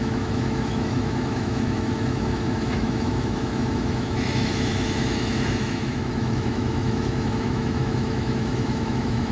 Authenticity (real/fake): fake